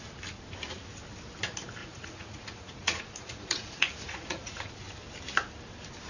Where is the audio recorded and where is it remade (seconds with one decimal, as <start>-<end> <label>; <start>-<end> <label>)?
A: 0.0-1.8 recorded; 1.8-4.7 remade; 4.7-6.1 recorded